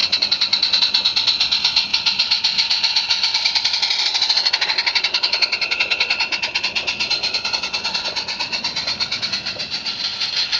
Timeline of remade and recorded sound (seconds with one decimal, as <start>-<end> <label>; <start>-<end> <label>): 0.0-0.8 remade; 0.8-7.2 recorded; 7.2-9.2 remade; 9.2-10.6 recorded

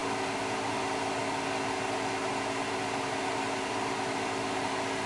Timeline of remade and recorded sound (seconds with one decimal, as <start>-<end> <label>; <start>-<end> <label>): 0.0-5.1 recorded

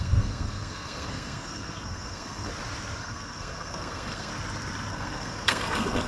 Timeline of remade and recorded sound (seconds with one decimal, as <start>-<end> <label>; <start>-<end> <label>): 0.0-2.5 remade; 2.5-3.0 recorded; 3.0-4.3 remade; 4.3-4.9 recorded; 4.9-6.1 remade